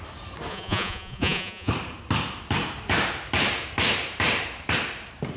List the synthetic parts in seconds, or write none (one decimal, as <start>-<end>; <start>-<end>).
0.5-1.7